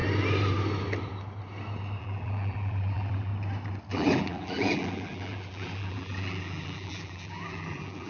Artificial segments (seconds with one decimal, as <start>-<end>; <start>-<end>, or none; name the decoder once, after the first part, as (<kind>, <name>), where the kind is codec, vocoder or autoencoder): 2.0-3.3 (vocoder, BigVGAN v2); 3.9-8.1